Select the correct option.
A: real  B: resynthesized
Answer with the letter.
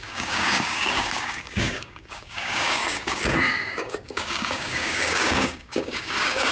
B